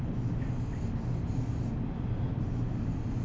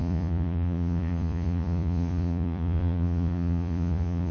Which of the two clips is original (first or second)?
first